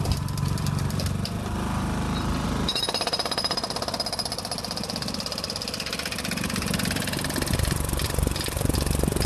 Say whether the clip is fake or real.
fake